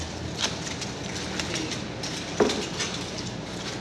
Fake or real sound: real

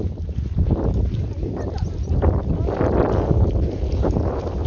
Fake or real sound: real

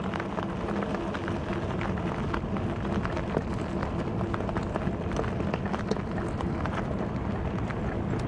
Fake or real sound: real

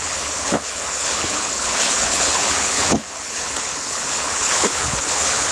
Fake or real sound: fake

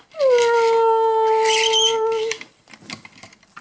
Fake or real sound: real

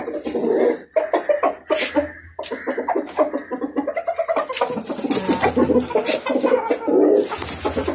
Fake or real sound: real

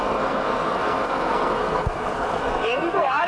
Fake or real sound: fake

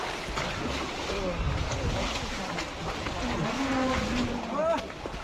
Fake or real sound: real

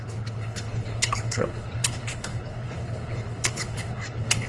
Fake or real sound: fake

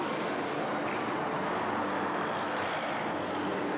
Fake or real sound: real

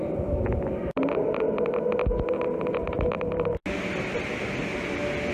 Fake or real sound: real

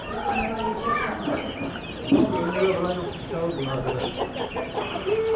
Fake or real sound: real